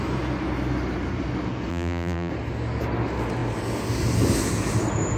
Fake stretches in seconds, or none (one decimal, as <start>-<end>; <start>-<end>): 1.7-2.3